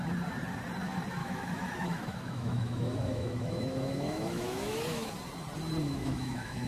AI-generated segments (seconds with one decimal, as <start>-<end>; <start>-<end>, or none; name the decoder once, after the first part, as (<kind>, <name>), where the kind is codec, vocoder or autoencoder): 1.2-5.1 (autoencoder, DAC-VAE); 5.8-6.7

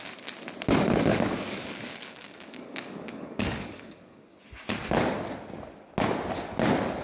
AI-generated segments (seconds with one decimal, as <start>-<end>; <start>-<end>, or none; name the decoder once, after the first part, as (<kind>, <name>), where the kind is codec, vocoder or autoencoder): 1.1-4.2 (codec, DAC)